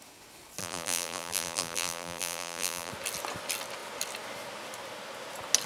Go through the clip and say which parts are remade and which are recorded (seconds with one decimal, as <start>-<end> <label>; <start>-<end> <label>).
0.0-0.6 recorded; 0.6-2.9 remade; 2.9-5.7 recorded